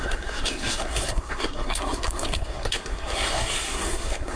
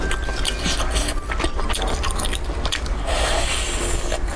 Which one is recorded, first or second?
second